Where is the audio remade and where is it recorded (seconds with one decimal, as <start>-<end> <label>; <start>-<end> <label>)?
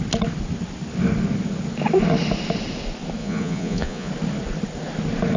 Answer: 0.0-3.2 recorded; 3.2-4.1 remade; 4.1-5.4 recorded